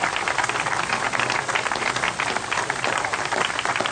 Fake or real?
real